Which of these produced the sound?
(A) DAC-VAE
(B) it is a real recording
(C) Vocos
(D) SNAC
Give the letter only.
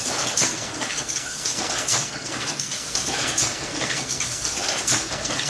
D